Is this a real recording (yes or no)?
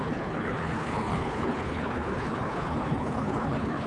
no